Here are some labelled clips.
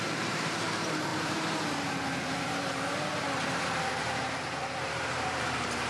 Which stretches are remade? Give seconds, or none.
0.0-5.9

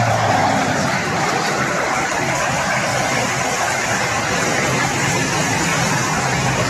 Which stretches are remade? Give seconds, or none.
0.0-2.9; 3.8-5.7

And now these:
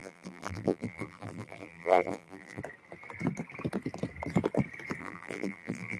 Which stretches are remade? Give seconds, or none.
0.0-2.6; 5.0-6.0

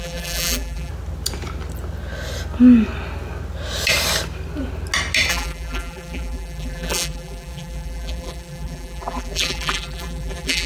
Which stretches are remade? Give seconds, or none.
0.0-0.9; 5.3-10.7

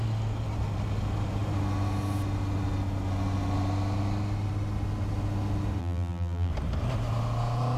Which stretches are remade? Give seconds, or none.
5.8-6.5